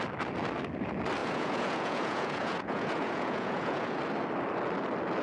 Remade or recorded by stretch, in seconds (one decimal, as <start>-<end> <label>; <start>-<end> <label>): 0.0-1.2 recorded; 1.2-4.0 remade; 4.0-5.2 recorded